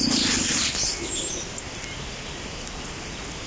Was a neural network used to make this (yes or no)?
no